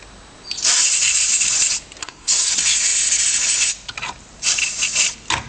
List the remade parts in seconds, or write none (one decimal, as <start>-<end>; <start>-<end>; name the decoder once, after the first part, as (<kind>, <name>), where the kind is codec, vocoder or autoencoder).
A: 2.0-2.5 (codec, SNAC)